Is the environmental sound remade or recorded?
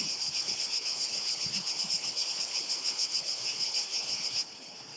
remade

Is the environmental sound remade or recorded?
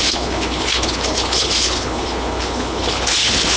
remade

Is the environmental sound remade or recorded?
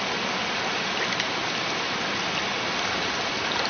recorded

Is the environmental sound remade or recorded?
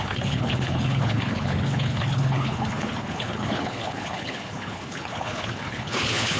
remade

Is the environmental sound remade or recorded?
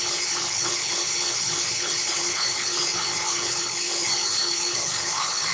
remade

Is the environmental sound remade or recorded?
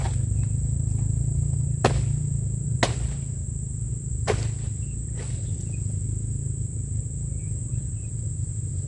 recorded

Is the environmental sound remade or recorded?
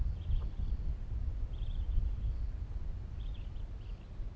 recorded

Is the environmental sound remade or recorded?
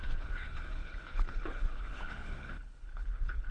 remade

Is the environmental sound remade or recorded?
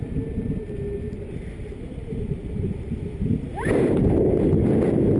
recorded